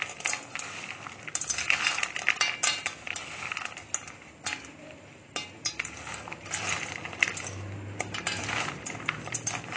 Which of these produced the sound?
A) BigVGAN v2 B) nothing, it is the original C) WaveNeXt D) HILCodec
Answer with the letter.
B